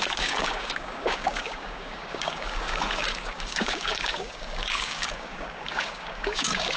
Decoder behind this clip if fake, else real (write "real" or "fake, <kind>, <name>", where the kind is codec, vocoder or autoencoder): fake, codec, DAC